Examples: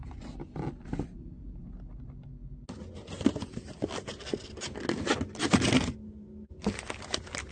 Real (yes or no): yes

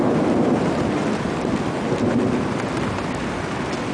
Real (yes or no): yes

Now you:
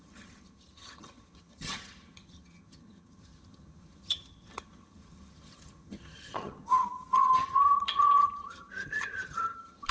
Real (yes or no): no